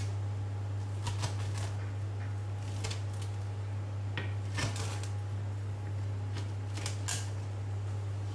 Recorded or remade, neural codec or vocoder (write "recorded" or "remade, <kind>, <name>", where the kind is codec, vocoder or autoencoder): recorded